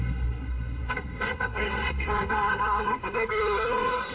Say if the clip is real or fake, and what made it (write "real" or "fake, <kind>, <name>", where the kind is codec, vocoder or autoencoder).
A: fake, codec, SNAC